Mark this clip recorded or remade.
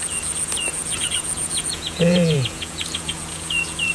remade